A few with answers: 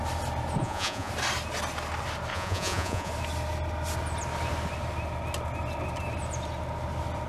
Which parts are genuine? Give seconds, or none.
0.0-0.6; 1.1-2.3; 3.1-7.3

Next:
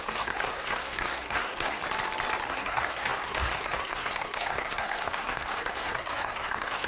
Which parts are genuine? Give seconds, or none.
1.8-2.5

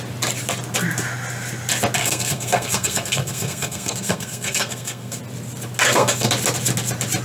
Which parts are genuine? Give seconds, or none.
0.0-2.0; 5.2-5.8; 6.3-7.2